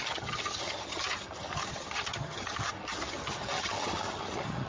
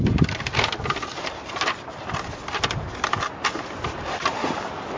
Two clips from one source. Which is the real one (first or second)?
second